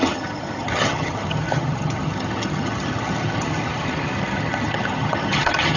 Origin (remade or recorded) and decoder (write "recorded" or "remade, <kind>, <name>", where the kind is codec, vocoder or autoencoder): remade, vocoder, HiFi-GAN